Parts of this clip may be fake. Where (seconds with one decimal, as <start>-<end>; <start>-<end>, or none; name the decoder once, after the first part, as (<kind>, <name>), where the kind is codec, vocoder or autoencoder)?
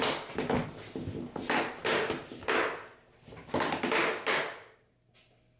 none